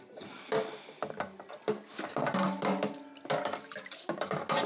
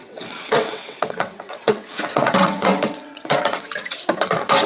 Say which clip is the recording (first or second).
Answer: first